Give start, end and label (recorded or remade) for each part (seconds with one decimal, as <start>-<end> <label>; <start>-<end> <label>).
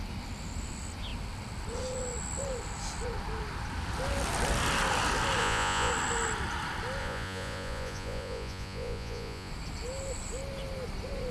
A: 0.0-5.4 recorded; 5.4-5.9 remade; 5.9-7.0 recorded; 7.0-9.5 remade; 9.5-11.3 recorded